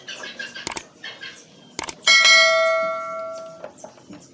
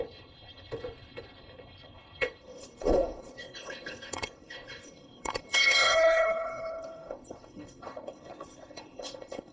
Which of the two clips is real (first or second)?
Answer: first